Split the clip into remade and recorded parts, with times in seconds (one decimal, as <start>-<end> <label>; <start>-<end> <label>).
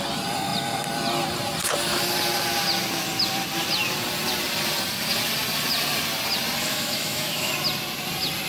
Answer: 0.0-6.6 recorded; 6.6-7.5 remade; 7.5-8.5 recorded